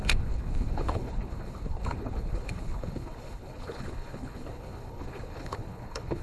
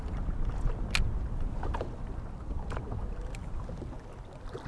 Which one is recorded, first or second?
second